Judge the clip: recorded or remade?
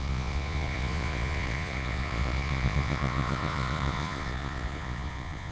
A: remade